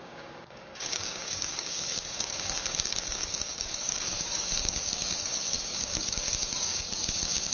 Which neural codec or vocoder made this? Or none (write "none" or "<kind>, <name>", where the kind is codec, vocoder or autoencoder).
codec, DAC